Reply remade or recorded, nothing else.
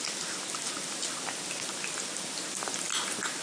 recorded